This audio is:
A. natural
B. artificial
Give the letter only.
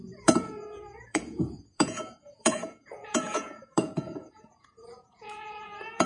B